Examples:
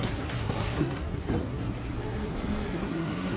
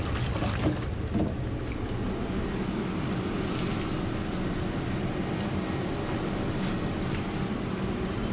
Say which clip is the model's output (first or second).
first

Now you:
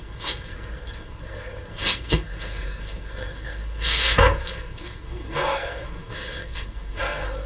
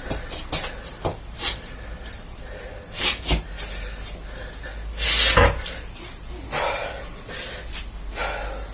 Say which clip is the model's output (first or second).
first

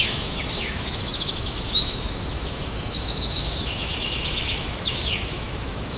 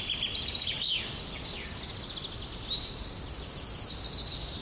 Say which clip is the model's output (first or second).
first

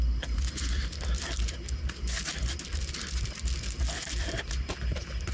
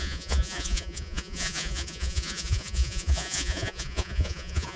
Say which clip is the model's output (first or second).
second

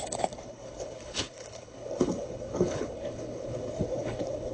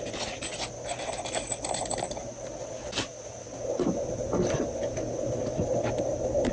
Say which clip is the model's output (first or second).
first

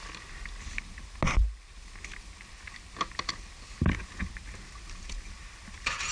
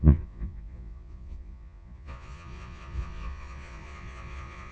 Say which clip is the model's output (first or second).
second